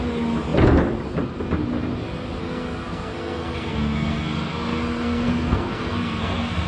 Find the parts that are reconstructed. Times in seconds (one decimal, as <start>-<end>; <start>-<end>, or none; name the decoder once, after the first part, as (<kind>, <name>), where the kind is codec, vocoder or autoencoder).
2.4-6.7 (codec, SNAC)